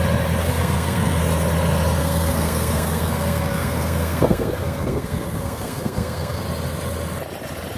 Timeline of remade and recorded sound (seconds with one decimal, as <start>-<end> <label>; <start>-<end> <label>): 0.0-0.4 recorded; 0.4-1.2 remade; 1.2-2.0 recorded; 2.0-6.4 remade; 6.4-7.8 recorded